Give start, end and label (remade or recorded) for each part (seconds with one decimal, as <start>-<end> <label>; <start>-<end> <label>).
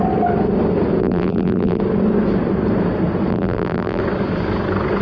0.0-1.0 recorded; 1.0-1.8 remade; 1.8-3.3 recorded; 3.3-4.0 remade; 4.0-5.0 recorded